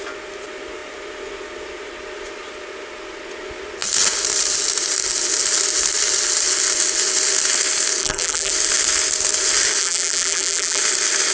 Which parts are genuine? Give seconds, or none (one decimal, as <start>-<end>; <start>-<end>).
0.0-8.0; 8.5-9.8; 10.8-11.3